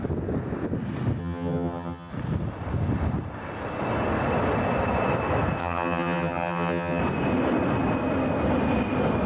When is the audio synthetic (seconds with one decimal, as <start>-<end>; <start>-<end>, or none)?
1.2-2.1; 5.6-7.0